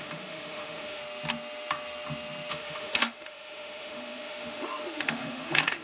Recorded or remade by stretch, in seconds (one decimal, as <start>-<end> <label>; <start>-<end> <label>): 0.0-1.0 remade; 1.0-2.5 recorded; 2.5-5.8 remade